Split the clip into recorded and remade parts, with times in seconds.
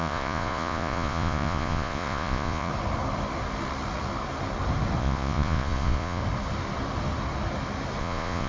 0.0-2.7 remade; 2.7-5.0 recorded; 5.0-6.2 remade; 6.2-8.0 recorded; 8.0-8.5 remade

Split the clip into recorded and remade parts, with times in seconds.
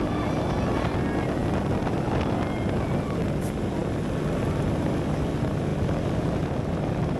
0.0-7.2 recorded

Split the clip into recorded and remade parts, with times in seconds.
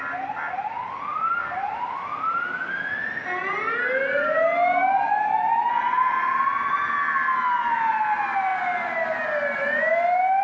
0.0-10.4 recorded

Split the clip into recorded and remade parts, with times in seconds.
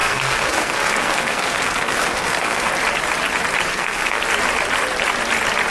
0.0-2.7 remade; 2.7-3.7 recorded; 3.7-4.2 remade; 4.2-5.7 recorded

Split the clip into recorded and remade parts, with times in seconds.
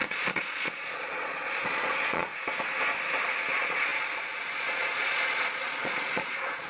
0.0-2.3 remade; 2.3-3.5 recorded; 3.5-6.7 remade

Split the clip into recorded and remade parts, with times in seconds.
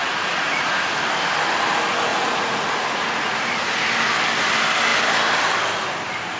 0.0-0.7 remade; 0.7-2.1 recorded; 2.1-3.7 remade; 3.7-6.4 recorded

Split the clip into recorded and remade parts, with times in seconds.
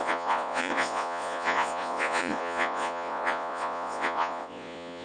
0.0-5.0 remade